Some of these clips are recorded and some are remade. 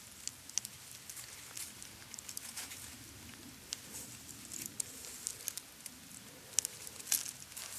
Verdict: recorded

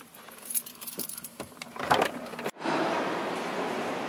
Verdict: remade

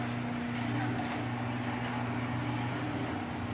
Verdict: recorded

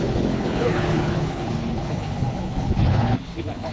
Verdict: remade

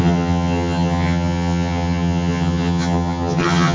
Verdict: remade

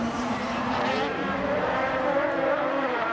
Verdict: remade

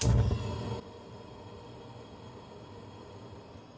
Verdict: recorded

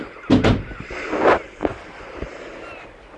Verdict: recorded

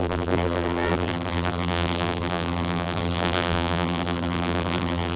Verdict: remade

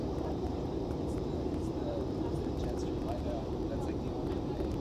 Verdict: remade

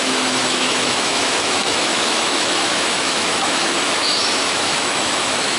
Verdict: remade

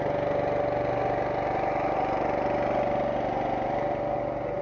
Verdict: recorded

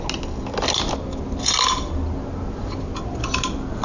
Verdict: recorded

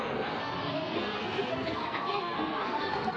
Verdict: remade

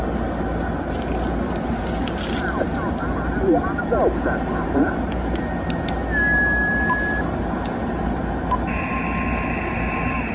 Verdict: recorded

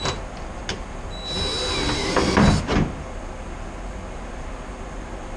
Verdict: recorded